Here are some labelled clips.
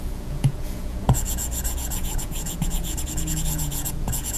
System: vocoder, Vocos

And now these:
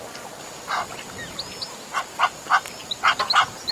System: none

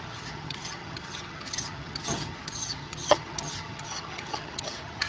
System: vocoder, HiFi-GAN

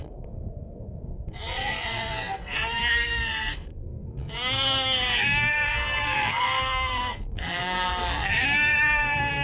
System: codec, SNAC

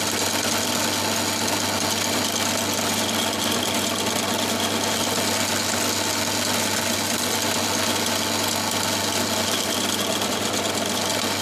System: none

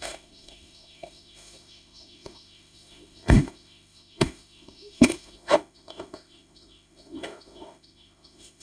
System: autoencoder, DAC-VAE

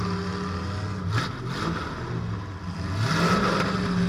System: none